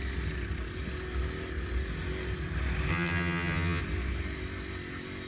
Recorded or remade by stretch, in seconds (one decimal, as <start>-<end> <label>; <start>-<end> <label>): 0.0-2.9 recorded; 2.9-3.8 remade; 3.8-5.3 recorded